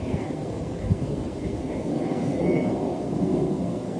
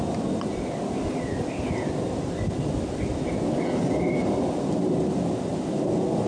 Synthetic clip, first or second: first